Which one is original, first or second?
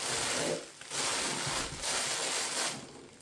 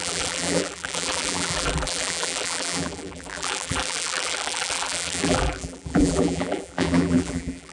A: first